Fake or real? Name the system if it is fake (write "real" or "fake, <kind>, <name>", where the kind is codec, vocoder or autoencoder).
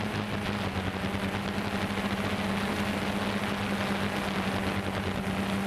real